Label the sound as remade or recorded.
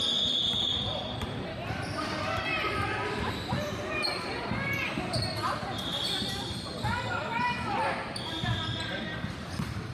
remade